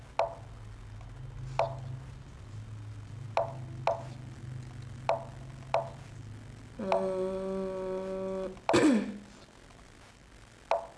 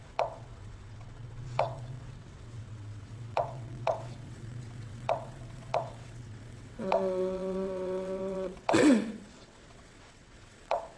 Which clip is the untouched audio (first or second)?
first